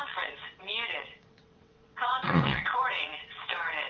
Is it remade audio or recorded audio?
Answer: remade